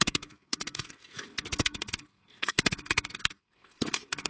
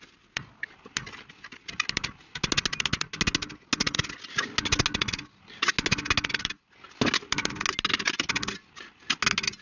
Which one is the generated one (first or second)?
first